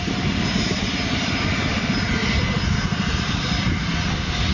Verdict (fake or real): real